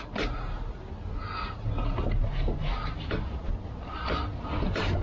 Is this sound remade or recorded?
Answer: recorded